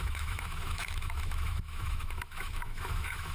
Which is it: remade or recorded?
remade